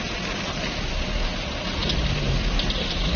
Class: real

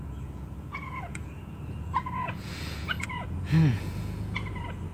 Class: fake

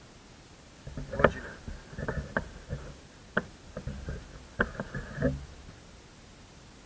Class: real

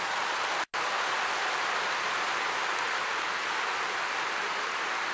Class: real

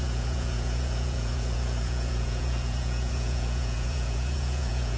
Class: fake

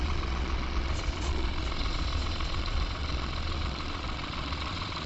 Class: fake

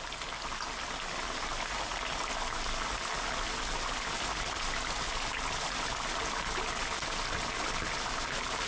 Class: real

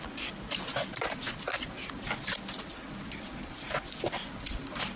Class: real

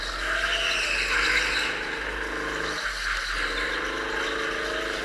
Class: real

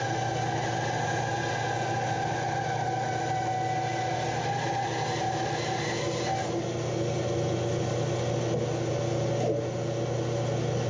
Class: real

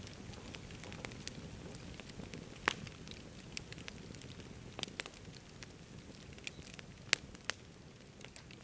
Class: real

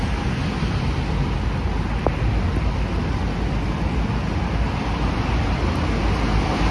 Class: real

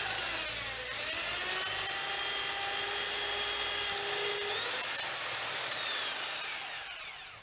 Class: real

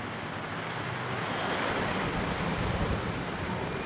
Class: real